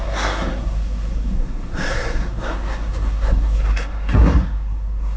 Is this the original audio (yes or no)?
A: no